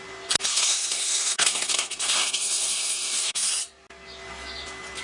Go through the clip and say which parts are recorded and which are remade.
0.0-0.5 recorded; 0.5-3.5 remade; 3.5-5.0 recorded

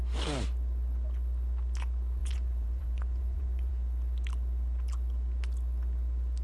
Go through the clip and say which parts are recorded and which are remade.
0.0-2.2 recorded; 2.2-3.7 remade; 3.7-6.4 recorded

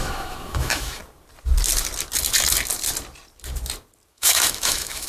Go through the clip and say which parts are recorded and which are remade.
0.0-1.0 remade; 1.0-4.1 recorded; 4.1-5.1 remade

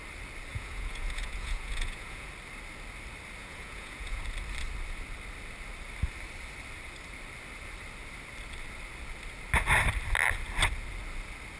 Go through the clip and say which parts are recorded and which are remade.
0.0-0.5 recorded; 0.5-2.3 remade; 2.3-3.4 recorded; 3.4-4.2 remade; 4.2-11.6 recorded

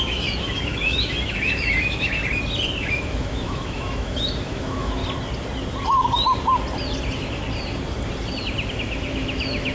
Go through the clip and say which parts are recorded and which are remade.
0.0-2.2 remade; 2.2-2.8 recorded; 2.8-5.0 remade; 5.0-8.7 recorded; 8.7-9.7 remade

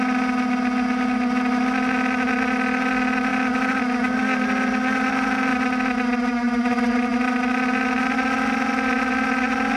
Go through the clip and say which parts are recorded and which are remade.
0.0-9.8 recorded

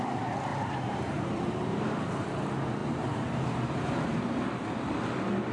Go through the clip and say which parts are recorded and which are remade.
0.0-0.5 recorded; 0.5-2.0 remade; 2.0-2.8 recorded; 2.8-4.4 remade; 4.4-5.5 recorded